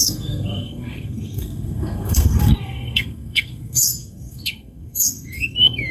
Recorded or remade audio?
remade